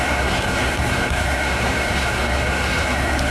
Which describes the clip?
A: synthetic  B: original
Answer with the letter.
A